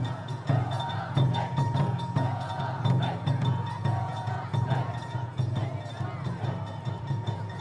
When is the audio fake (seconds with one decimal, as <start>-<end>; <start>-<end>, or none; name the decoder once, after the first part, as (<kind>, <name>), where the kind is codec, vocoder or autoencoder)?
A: 0.0-5.6 (vocoder, Vocos); 7.0-7.6